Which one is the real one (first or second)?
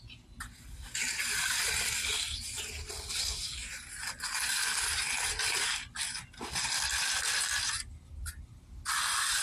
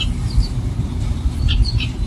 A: first